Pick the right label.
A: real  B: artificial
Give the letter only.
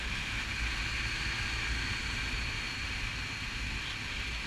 A